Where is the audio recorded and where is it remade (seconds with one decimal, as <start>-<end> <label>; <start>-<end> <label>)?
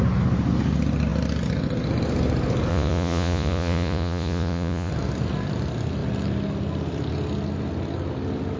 0.0-2.7 recorded; 2.7-4.9 remade; 4.9-8.6 recorded